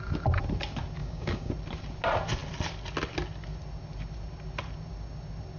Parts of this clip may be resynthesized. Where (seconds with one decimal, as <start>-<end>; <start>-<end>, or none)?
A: 1.0-1.5